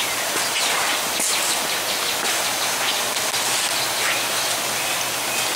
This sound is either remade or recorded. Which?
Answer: recorded